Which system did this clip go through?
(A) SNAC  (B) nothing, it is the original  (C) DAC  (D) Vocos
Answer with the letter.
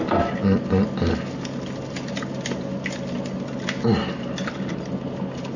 B